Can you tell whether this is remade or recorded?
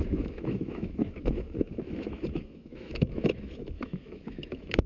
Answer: remade